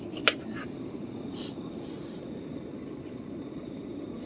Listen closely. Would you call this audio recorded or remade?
recorded